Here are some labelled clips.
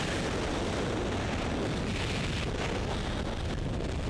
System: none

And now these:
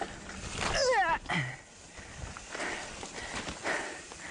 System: none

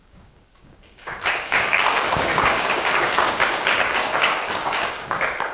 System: codec, DAC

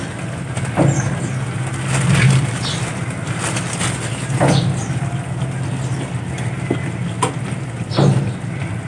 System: none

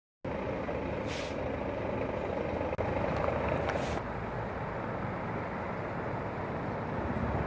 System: none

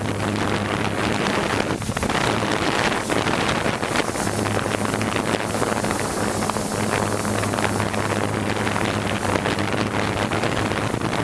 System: none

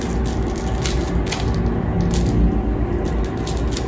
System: none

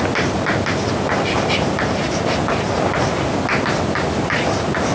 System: none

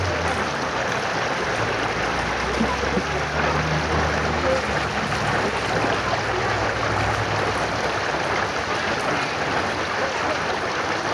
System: none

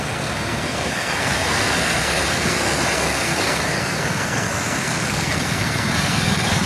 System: codec, SNAC